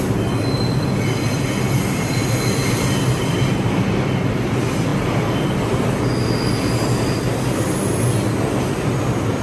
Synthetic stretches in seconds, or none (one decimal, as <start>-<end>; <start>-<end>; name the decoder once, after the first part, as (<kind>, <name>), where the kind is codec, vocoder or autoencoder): none